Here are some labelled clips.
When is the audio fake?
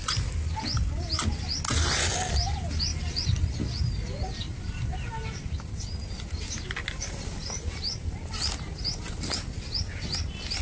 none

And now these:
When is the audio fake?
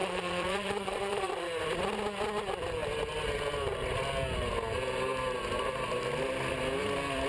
0.0-1.3 (vocoder, Vocos)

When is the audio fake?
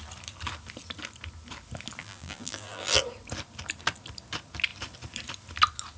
2.0-3.0 (vocoder, BigVGAN v2)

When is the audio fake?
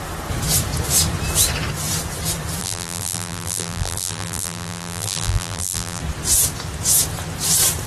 2.6-6.0 (vocoder, BigVGAN v2)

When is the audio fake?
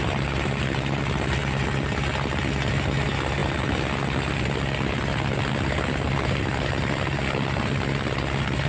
none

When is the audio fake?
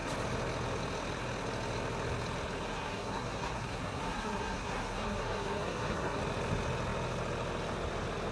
2.7-6.2 (codec, SNAC)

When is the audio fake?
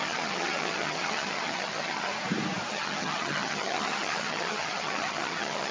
0.0-2.1 (vocoder, HiFi-GAN); 2.7-5.7